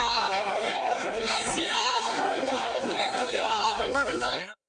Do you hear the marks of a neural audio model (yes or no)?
yes